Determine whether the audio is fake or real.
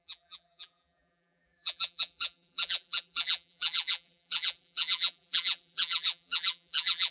fake